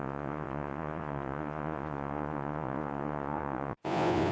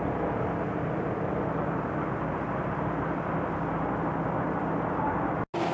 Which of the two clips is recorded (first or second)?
second